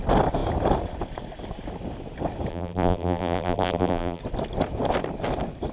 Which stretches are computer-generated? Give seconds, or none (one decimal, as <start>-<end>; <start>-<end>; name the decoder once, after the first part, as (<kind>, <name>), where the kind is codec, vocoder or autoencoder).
2.5-4.2 (vocoder, BigVGAN v2)